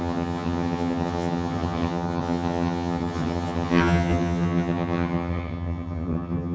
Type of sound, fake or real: fake